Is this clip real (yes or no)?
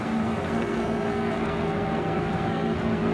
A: no